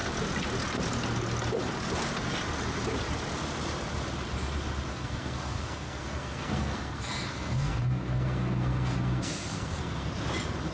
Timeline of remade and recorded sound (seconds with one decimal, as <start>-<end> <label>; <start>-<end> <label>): 0.0-4.9 recorded; 4.9-10.1 remade; 10.1-10.7 recorded

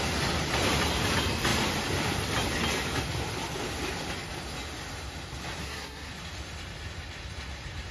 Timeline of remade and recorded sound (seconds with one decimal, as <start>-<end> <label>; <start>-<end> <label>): 0.0-5.6 recorded; 5.6-6.1 remade; 6.1-7.9 recorded